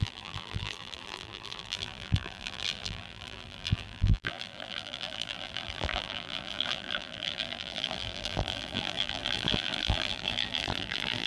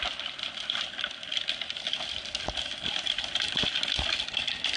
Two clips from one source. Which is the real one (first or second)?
second